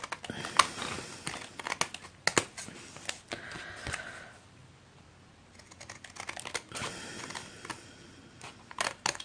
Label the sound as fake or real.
real